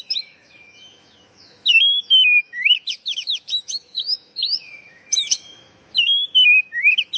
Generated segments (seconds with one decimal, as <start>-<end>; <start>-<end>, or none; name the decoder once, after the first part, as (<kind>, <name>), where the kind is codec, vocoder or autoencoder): 0.0-7.2 (autoencoder, DAC-VAE)